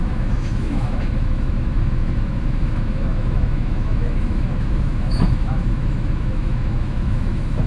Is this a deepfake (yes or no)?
yes